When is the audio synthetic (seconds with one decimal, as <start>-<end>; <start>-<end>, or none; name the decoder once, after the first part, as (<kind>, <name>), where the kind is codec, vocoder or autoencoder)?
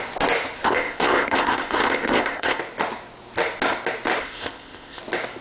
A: 0.6-2.6 (codec, ZipCodec); 4.2-5.0